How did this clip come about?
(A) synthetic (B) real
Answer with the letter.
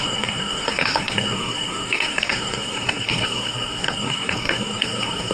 A